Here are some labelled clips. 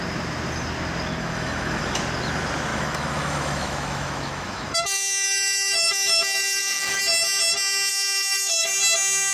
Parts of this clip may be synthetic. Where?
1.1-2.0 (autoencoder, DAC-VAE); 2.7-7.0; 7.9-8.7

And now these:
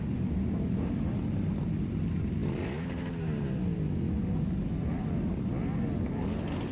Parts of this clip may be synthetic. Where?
none

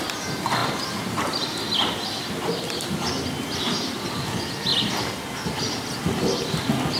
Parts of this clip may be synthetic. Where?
none